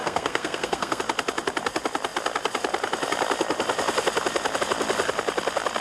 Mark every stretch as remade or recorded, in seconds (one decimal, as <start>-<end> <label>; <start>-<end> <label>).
0.0-1.0 remade; 1.0-5.8 recorded